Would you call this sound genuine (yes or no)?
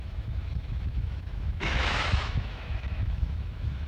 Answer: no